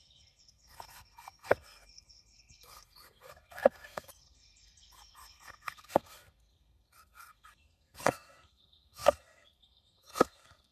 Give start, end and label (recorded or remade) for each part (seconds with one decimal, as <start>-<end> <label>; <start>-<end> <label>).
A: 0.0-10.7 remade